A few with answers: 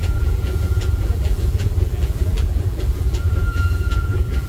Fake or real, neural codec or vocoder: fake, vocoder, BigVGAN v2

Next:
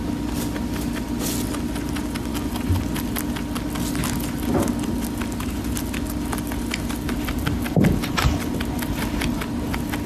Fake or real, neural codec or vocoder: real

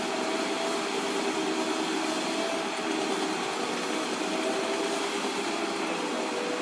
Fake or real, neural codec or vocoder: real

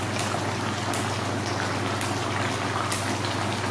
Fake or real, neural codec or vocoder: real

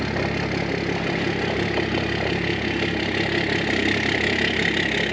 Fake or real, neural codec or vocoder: real